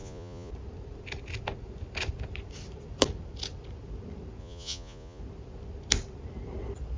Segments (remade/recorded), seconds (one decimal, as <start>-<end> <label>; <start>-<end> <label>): 0.0-0.5 remade; 0.5-4.4 recorded; 4.4-5.2 remade; 5.2-7.0 recorded